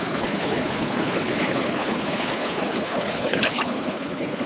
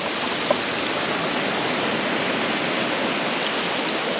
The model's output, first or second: first